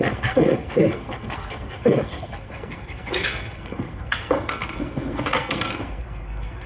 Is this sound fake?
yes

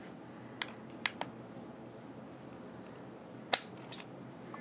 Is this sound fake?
no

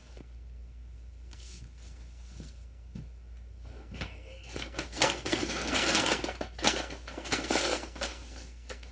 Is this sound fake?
yes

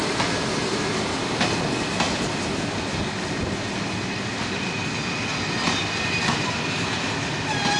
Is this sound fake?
no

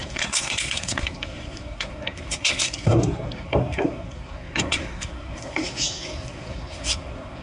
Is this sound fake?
yes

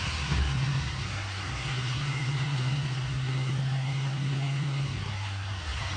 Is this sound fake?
yes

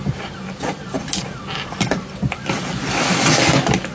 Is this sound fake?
no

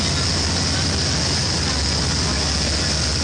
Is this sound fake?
no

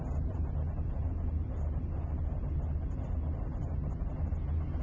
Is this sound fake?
no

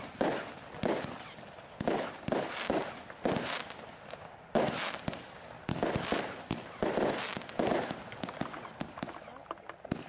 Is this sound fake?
no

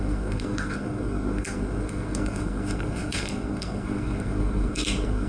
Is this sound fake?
yes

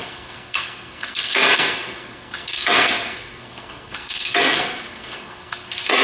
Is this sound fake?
yes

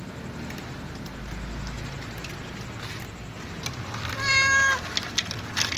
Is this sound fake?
no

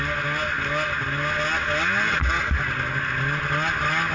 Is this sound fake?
no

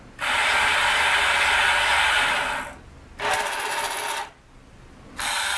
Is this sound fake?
no